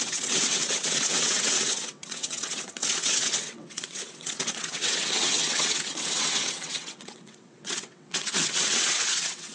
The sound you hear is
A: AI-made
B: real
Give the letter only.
A